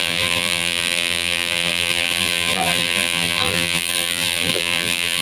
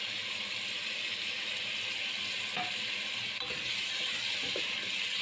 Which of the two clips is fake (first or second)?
first